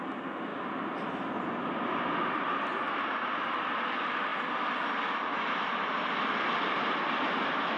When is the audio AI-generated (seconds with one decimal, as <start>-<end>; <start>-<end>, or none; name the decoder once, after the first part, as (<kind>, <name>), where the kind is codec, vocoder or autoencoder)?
none